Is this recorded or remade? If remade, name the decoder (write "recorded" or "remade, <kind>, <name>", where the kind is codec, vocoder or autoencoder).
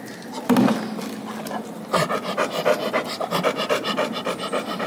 recorded